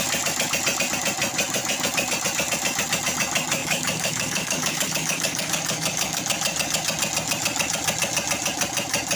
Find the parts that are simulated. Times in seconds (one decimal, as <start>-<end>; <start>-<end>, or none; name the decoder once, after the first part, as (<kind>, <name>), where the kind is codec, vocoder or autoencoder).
3.6-6.2 (codec, DAC)